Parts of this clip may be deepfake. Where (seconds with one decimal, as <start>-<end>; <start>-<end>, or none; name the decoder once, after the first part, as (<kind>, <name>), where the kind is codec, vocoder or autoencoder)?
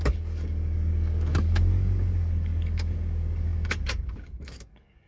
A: 0.0-5.1 (codec, DAC)